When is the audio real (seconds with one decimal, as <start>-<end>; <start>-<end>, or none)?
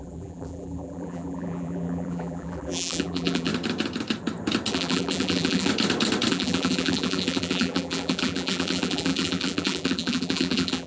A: 3.5-4.7; 5.7-6.3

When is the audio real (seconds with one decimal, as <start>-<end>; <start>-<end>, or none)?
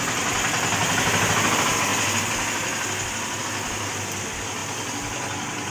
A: 0.0-0.8; 1.3-5.7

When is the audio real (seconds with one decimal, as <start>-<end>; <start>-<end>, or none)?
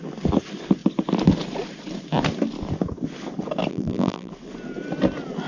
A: 0.0-3.7; 4.3-5.5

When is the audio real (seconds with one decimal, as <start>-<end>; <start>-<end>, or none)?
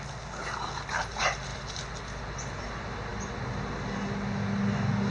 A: 0.0-5.1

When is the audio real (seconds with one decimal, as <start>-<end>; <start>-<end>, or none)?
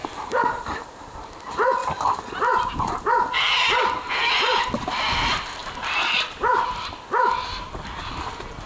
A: 1.4-5.6; 6.2-8.7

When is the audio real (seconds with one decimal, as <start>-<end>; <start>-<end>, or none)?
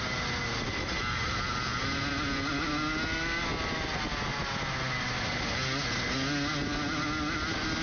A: 0.0-1.7; 2.7-7.8